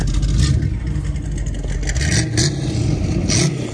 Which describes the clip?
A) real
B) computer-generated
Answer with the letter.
A